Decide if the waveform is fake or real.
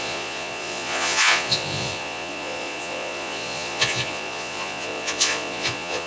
fake